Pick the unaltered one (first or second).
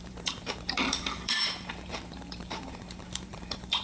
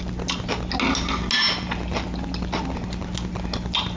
second